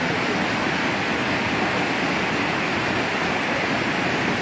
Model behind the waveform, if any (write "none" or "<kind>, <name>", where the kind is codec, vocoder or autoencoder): none